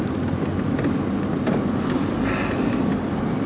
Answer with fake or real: real